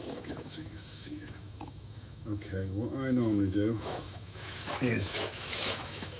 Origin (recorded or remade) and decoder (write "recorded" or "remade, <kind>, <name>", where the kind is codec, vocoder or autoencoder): remade, autoencoder, DAC-VAE